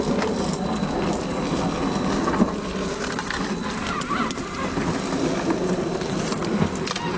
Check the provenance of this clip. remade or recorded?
recorded